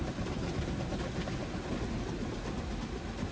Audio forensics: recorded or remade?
recorded